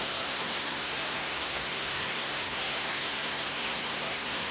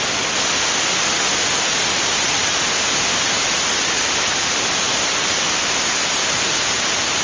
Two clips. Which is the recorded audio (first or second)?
second